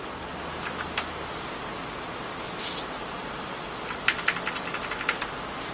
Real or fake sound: real